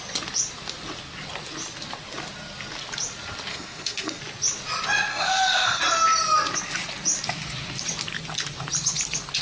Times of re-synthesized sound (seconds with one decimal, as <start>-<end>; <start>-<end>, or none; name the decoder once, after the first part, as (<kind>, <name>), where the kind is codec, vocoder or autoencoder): 3.5-4.2 (codec, SNAC); 5.1-5.8